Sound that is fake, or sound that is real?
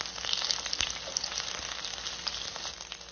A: real